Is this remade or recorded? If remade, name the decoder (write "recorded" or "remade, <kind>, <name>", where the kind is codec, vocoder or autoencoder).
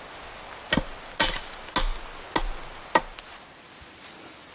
recorded